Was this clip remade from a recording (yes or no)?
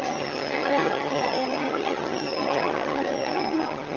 yes